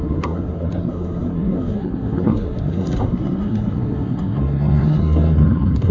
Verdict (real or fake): fake